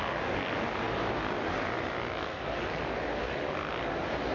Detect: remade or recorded recorded